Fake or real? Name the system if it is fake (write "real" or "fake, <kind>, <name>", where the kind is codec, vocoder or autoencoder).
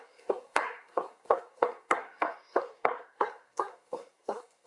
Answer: fake, codec, SNAC